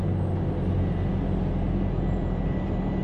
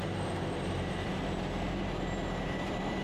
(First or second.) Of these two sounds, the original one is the first